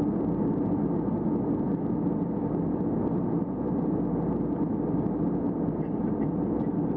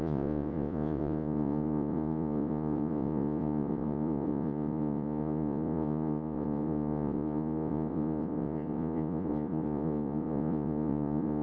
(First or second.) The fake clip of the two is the second